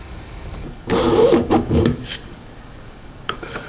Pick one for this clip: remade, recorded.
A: remade